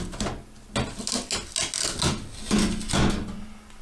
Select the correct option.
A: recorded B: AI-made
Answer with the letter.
A